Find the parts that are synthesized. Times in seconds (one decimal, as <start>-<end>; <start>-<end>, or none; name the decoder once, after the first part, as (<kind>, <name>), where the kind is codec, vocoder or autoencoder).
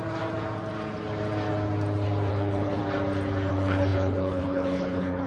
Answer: 2.3-2.8 (codec, HILCodec); 3.5-5.3